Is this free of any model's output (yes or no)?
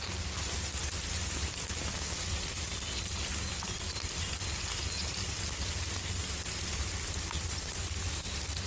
yes